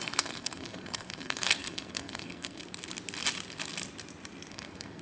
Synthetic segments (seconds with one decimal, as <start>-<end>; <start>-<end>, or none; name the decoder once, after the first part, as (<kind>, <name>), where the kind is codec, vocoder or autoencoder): 0.0-2.6 (codec, SNAC); 4.5-5.0